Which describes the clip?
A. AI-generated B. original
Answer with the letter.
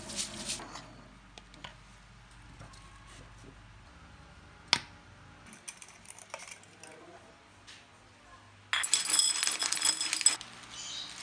B